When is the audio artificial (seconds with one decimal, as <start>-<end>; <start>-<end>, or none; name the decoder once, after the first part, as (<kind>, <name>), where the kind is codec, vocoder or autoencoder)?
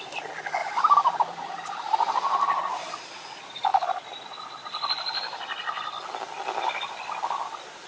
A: 0.6-3.1 (vocoder, BigVGAN v2)